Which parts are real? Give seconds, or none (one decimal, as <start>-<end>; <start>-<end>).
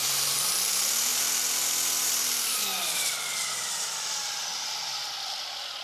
0.7-1.1; 1.6-2.0